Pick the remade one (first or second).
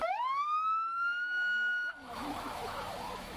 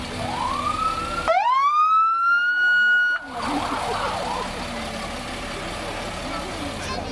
first